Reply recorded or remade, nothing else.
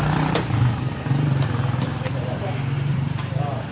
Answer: remade